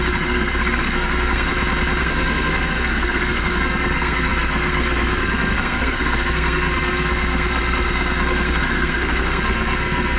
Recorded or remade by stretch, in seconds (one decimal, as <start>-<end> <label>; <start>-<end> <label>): 0.0-1.5 remade; 1.5-2.0 recorded; 2.0-10.2 remade